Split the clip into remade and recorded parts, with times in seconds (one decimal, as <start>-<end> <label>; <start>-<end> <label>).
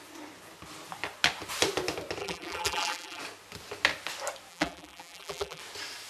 0.0-2.2 recorded; 2.2-3.2 remade; 3.2-4.5 recorded; 4.5-5.6 remade; 5.6-6.1 recorded